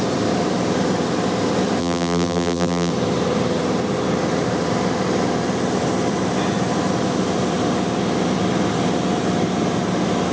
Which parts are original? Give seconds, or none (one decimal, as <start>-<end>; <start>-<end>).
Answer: 0.0-1.8; 2.9-10.3